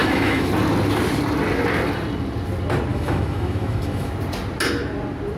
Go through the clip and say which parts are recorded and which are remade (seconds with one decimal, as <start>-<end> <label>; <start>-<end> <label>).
0.0-0.5 remade; 0.5-2.9 recorded; 2.9-4.1 remade; 4.1-5.4 recorded